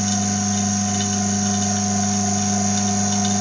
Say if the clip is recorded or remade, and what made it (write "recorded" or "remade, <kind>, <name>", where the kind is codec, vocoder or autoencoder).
recorded